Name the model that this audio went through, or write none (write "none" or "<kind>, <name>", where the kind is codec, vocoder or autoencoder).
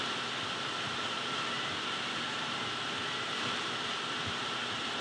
vocoder, BigVGAN v2